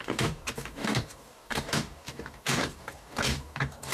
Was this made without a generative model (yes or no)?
no